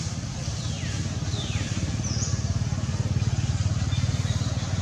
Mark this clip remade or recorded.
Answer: recorded